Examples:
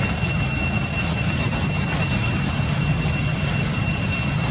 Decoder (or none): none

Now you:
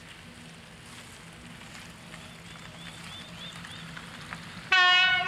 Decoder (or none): none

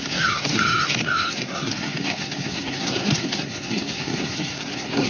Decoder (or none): codec, SNAC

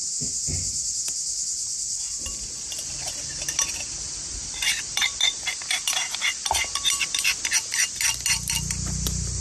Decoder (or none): none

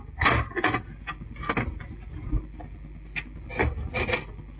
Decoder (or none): none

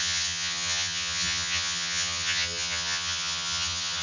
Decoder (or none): vocoder, HiFi-GAN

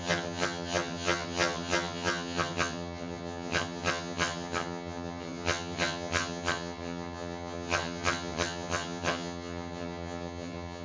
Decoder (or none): vocoder, HiFi-GAN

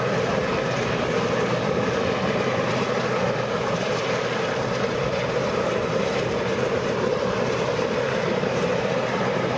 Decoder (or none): vocoder, BigVGAN v2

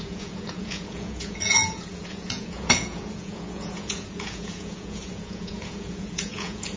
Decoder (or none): vocoder, Vocos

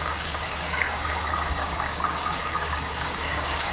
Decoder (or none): codec, DAC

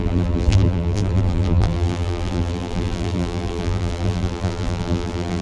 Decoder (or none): vocoder, BigVGAN v2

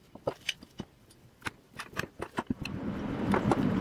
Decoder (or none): vocoder, BigVGAN v2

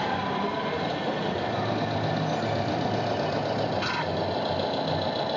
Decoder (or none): none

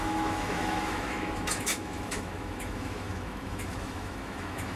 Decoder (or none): autoencoder, DAC-VAE